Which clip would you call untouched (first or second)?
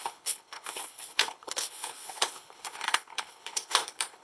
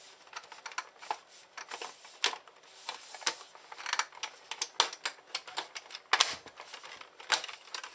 second